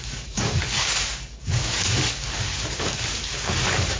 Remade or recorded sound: remade